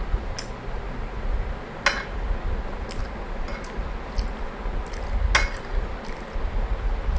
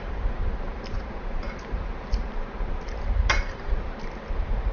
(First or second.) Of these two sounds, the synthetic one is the second